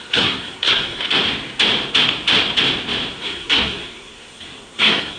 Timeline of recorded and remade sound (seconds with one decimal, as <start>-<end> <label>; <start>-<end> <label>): 0.0-1.2 remade; 1.2-3.1 recorded; 3.1-5.2 remade